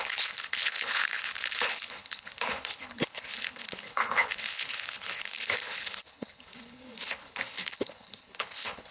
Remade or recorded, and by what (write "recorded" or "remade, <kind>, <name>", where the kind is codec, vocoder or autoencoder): remade, codec, HILCodec